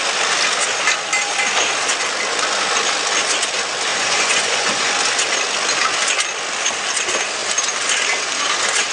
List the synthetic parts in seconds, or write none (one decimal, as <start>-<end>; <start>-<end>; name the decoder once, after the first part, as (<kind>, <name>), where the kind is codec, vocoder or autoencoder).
3.9-4.9 (vocoder, Vocos)